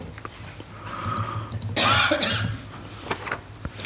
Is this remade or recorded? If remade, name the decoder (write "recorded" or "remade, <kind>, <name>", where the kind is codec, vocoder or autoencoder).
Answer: recorded